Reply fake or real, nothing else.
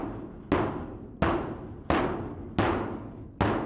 real